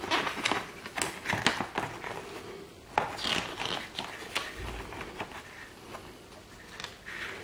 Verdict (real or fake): real